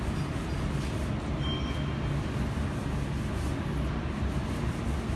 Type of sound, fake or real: real